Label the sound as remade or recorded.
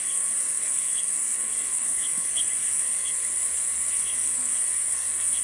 remade